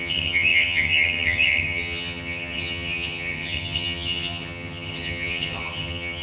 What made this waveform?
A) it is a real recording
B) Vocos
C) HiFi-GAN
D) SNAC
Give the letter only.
C